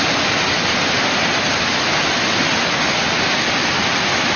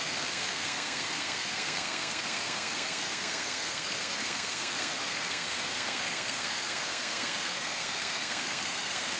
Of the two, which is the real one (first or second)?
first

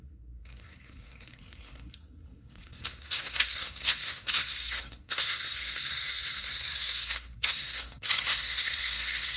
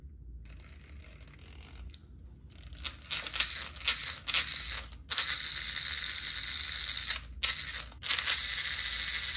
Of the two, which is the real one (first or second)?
second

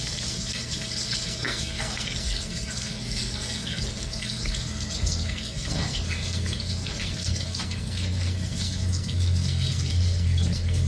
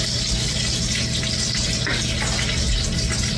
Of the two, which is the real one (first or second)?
second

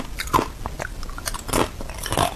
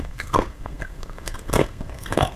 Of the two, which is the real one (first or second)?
first